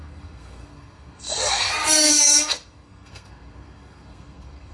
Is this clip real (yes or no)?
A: no